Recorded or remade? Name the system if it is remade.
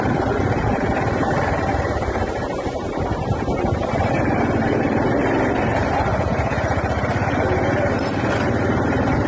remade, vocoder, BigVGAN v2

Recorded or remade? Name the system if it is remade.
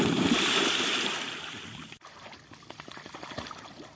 remade, vocoder, BigVGAN v2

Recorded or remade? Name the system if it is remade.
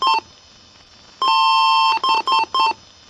recorded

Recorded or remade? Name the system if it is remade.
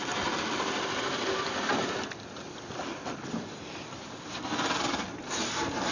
remade, vocoder, BigVGAN v2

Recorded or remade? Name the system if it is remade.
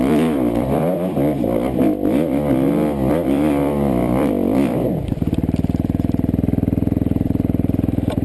remade, vocoder, BigVGAN v2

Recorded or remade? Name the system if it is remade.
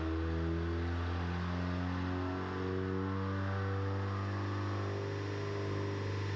recorded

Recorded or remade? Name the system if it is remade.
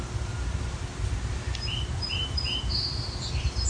recorded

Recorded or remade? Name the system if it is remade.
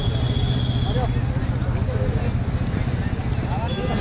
recorded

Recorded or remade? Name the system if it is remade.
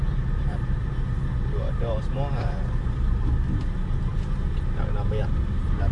recorded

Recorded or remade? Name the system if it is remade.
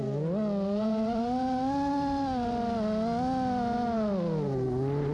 recorded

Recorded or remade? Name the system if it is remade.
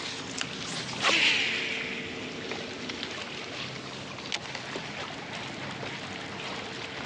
recorded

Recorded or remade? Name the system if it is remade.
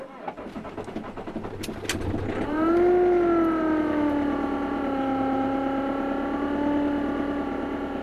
recorded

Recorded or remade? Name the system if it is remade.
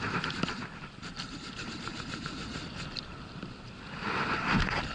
recorded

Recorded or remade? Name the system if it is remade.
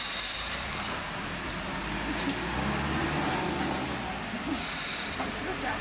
recorded